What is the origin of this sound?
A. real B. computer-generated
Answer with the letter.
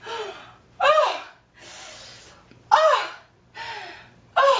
A